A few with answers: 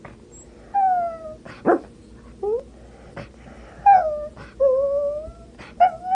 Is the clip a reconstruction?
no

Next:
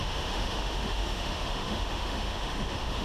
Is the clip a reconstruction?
yes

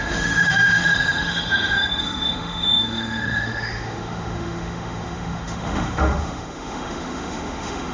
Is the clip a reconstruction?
yes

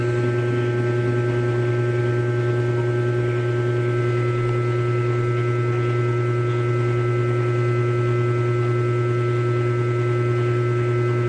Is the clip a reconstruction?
no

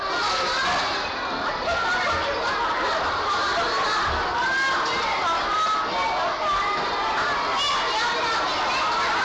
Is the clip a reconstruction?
no